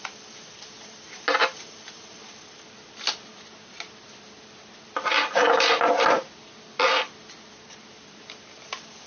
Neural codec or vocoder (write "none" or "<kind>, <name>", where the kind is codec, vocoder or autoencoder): none